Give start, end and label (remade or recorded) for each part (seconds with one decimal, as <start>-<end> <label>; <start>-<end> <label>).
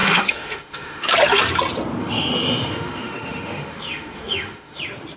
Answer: 0.0-1.1 remade; 1.1-2.0 recorded; 2.0-4.8 remade; 4.8-5.2 recorded